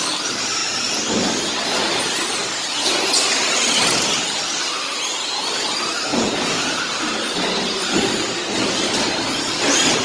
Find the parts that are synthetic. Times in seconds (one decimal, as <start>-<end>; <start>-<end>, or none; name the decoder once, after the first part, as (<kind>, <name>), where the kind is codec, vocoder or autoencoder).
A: 6.1-6.8 (vocoder, Vocos)